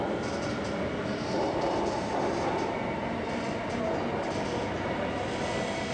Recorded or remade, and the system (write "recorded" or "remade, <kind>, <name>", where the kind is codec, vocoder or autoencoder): recorded